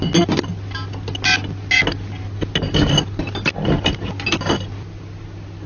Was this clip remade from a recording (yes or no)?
no